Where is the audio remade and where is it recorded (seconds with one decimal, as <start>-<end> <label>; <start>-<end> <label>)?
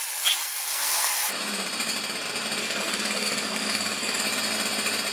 0.0-0.4 recorded; 0.4-1.3 remade; 1.3-2.6 recorded; 2.6-4.2 remade; 4.2-5.1 recorded